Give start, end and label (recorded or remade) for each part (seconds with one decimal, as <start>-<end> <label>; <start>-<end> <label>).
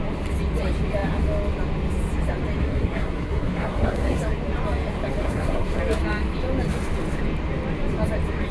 0.0-2.6 recorded; 2.6-4.2 remade; 4.2-5.2 recorded; 5.2-5.8 remade; 5.8-8.5 recorded